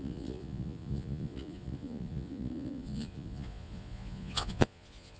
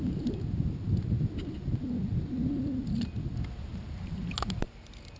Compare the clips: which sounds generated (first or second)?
first